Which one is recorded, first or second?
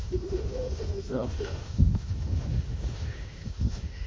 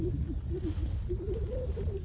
second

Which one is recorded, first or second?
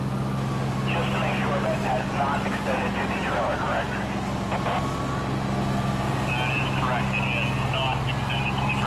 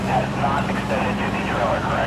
first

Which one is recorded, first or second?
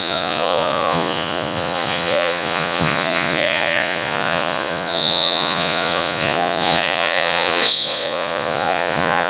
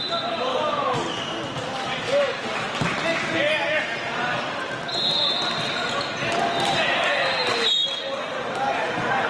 second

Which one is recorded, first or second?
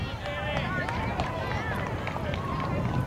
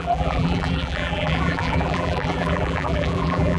first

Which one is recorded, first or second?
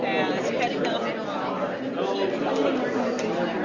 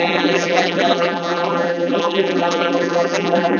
first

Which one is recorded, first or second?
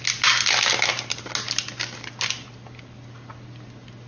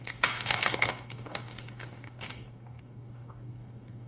first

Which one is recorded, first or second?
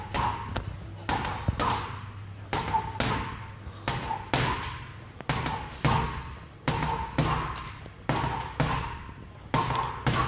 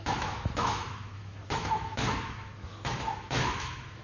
first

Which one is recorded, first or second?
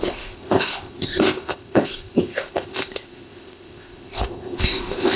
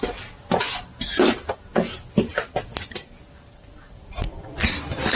second